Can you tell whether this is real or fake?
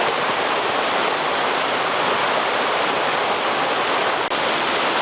real